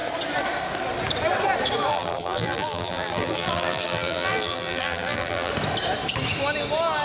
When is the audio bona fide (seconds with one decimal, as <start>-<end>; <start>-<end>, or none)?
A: 0.0-1.9; 5.5-7.0